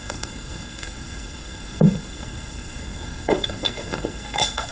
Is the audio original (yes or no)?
no